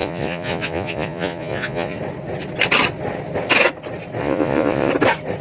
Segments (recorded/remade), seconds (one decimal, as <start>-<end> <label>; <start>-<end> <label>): 0.0-2.0 remade; 2.0-4.2 recorded; 4.2-4.9 remade; 4.9-5.4 recorded